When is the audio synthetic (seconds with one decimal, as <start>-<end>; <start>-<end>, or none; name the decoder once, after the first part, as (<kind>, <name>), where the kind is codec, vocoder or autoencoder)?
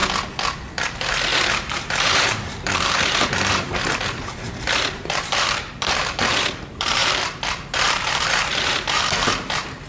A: 0.7-9.9 (vocoder, BigVGAN v2)